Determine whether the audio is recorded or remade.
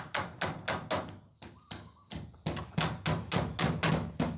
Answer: recorded